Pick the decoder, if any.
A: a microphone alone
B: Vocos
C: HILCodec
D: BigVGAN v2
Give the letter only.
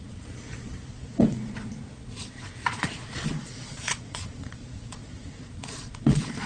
B